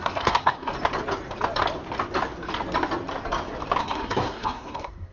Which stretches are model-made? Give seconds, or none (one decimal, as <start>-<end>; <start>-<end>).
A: 0.0-0.7; 3.8-5.1